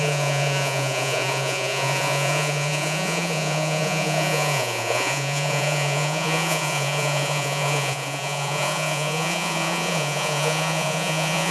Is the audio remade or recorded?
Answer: remade